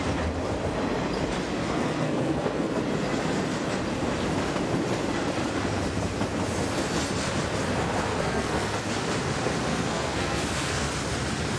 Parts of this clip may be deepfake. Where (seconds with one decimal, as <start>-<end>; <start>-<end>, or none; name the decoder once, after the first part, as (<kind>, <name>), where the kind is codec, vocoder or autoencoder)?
1.6-2.8 (codec, SNAC); 8.1-8.8; 9.7-10.9